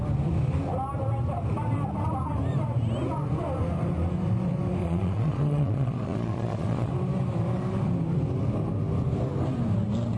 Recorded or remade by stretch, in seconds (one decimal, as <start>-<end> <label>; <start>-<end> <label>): 0.0-4.8 recorded; 4.8-6.9 remade; 6.9-10.2 recorded